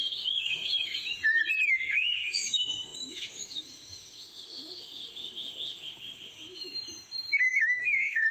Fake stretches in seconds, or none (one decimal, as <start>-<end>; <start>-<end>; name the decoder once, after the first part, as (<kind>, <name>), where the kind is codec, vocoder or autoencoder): 0.0-1.2 (autoencoder, DAC-VAE); 1.7-6.7; 7.6-8.3